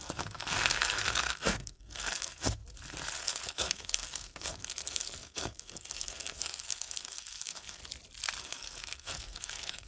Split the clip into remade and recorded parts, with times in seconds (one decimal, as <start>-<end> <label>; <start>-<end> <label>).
0.0-2.6 remade; 2.6-3.2 recorded; 3.2-7.8 remade; 7.8-8.4 recorded; 8.4-9.9 remade